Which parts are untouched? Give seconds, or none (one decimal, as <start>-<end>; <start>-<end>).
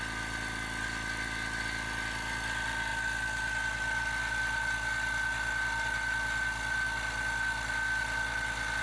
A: 0.0-8.8